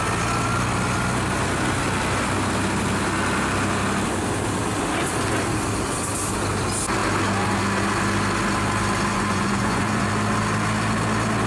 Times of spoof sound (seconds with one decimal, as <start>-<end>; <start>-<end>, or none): 9.1-10.1